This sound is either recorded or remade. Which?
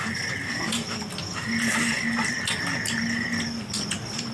recorded